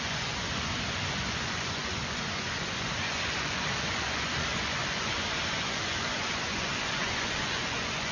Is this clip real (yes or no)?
no